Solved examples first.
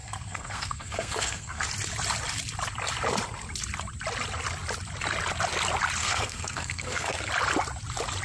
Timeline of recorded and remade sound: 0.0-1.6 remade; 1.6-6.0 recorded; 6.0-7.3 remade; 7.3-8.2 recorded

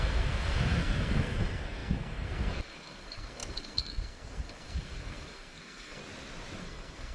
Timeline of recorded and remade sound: 0.0-6.0 remade; 6.0-6.6 recorded; 6.6-7.1 remade

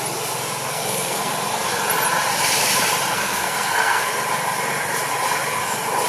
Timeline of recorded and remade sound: 0.0-0.7 recorded; 0.7-1.3 remade; 1.3-3.1 recorded; 3.1-4.1 remade; 4.1-6.1 recorded

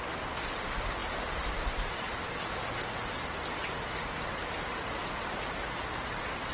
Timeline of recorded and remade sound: 0.0-6.5 recorded

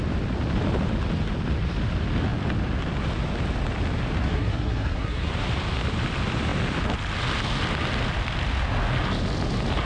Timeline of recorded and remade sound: 0.0-4.2 recorded; 4.2-5.3 remade; 5.3-9.9 recorded

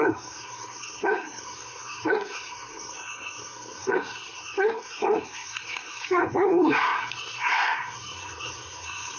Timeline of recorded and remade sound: 0.0-9.2 remade